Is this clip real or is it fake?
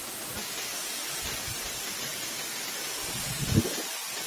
real